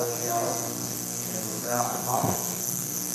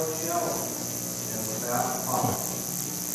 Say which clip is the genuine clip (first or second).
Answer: second